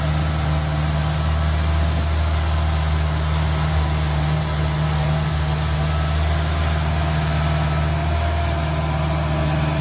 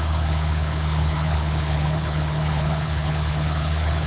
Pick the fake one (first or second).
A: second